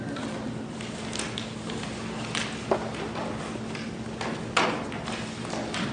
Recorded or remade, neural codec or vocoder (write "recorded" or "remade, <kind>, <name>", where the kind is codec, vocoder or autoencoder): recorded